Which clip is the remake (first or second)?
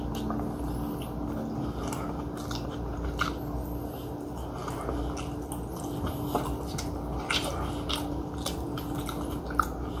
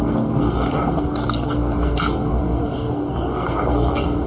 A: second